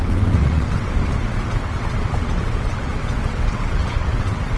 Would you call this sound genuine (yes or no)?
no